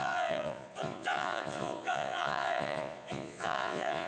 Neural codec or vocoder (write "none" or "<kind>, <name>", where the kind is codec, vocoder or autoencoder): vocoder, Vocos